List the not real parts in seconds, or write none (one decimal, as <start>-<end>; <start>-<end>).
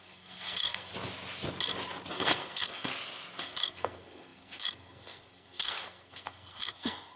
0.0-0.9; 2.1-2.9; 3.4-7.2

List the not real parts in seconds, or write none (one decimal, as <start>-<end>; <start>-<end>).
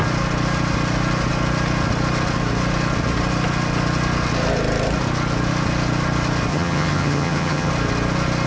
6.5-7.7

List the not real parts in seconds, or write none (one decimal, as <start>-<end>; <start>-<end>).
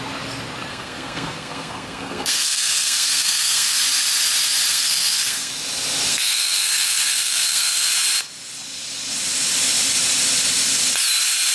0.7-3.8; 4.7-5.5; 6.1-7.9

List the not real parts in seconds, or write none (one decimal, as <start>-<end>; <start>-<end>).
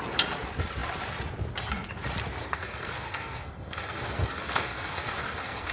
2.4-5.7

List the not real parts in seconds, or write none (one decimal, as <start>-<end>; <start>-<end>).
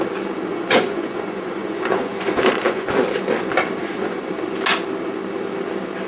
0.5-3.0; 3.8-4.3